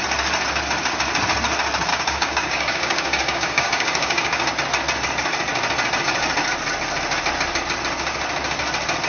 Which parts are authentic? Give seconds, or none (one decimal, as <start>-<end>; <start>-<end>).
0.0-1.9; 4.5-9.1